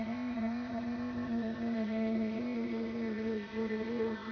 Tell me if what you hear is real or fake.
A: fake